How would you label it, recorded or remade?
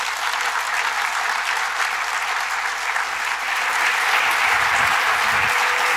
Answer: recorded